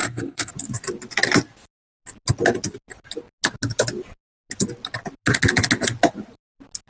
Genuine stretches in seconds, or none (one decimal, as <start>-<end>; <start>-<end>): 0.5-6.9

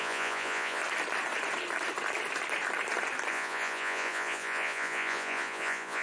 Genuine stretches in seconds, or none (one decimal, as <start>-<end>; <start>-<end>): 0.8-3.3

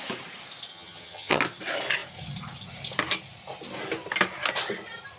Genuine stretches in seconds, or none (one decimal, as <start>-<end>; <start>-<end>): 0.0-0.7; 1.4-5.2